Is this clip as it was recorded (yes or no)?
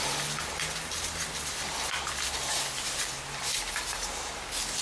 yes